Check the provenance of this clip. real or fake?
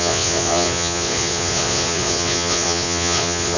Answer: fake